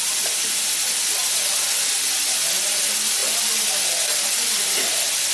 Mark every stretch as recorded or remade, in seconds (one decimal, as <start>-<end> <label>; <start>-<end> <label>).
0.0-5.3 recorded